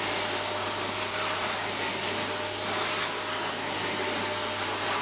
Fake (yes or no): no